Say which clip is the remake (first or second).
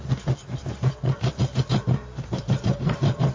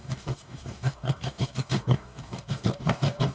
second